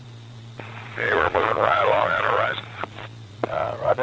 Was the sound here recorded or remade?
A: remade